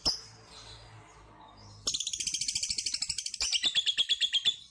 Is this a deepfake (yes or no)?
no